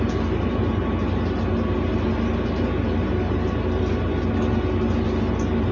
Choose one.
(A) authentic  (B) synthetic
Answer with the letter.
A